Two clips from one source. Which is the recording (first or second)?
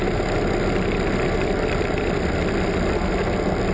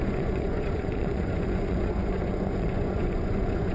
first